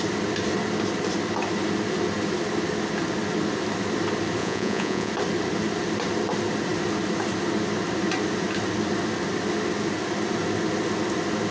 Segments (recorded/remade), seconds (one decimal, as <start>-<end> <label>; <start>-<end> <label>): 0.0-4.4 recorded; 4.4-5.1 remade; 5.1-11.5 recorded